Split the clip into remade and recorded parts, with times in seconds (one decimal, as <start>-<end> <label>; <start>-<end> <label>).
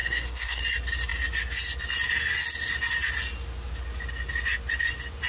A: 0.0-0.6 remade; 0.6-5.3 recorded